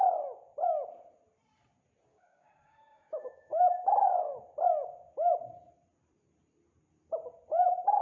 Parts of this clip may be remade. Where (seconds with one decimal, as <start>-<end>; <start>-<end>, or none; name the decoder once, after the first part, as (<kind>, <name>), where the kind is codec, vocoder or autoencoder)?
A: 2.1-4.4 (codec, DAC)